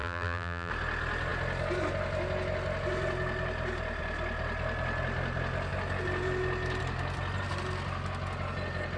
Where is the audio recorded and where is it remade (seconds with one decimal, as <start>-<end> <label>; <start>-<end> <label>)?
0.0-0.7 remade; 0.7-9.0 recorded